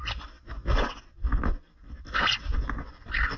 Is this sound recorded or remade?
recorded